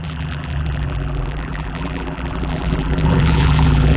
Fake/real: fake